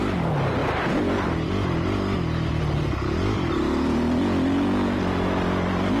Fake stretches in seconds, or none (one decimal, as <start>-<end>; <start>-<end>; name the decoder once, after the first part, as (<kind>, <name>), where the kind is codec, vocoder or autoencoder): 0.6-1.5 (vocoder, BigVGAN v2)